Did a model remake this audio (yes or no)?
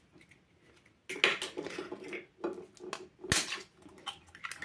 no